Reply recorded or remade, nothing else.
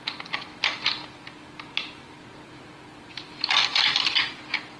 recorded